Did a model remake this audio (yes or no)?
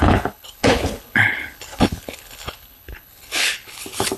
yes